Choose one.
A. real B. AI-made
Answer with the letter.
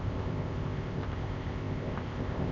B